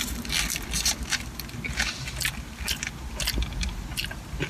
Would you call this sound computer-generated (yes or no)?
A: no